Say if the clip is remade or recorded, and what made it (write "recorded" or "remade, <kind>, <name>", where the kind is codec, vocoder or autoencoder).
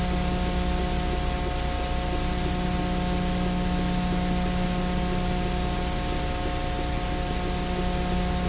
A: recorded